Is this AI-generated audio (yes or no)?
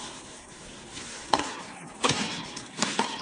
yes